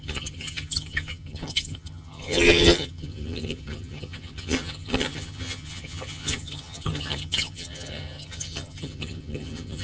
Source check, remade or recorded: remade